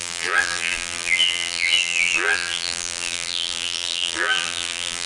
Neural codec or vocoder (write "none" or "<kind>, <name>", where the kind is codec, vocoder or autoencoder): vocoder, BigVGAN v2